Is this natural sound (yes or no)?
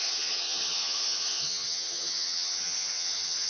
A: no